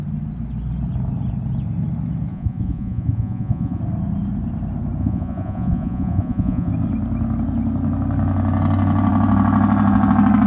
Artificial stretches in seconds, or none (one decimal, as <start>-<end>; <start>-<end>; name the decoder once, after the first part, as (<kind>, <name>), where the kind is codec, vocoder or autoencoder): 2.3-3.8 (vocoder, Vocos); 5.0-6.7